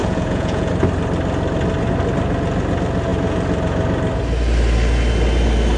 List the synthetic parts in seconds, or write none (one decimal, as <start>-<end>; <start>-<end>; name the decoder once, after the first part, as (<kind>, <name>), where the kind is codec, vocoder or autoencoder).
0.0-0.7 (vocoder, Vocos)